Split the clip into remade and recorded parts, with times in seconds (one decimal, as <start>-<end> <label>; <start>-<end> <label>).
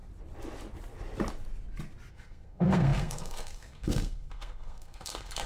0.0-2.1 recorded; 2.1-5.5 remade